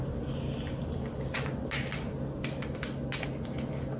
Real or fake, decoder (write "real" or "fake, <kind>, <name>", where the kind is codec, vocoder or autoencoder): real